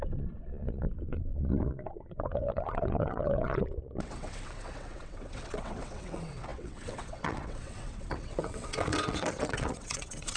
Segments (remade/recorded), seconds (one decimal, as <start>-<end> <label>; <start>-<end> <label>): 0.0-10.4 remade